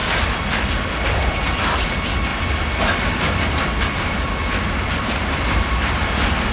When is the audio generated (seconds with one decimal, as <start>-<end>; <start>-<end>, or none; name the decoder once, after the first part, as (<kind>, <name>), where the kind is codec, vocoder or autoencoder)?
none